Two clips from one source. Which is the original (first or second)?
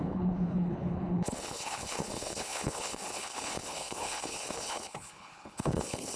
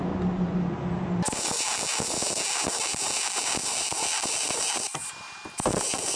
second